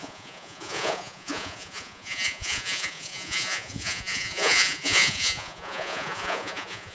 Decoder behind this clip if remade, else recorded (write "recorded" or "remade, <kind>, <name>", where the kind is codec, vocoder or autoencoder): remade, vocoder, Vocos